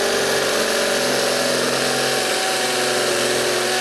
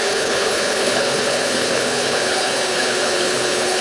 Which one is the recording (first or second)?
first